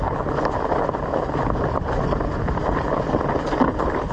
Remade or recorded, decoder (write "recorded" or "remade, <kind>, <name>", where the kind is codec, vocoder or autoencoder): recorded